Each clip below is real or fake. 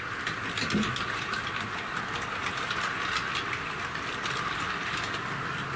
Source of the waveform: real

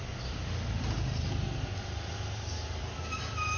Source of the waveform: real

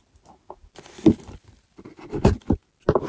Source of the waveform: real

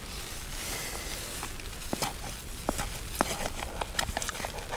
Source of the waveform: real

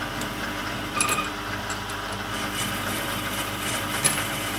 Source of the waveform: fake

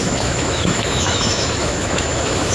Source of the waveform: fake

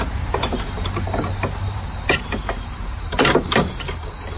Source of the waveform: fake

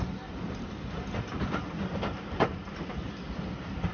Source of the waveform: real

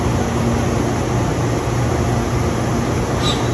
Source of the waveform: real